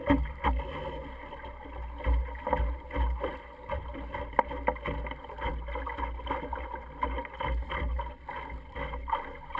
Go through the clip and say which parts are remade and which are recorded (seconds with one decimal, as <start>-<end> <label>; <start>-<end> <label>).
0.0-9.6 recorded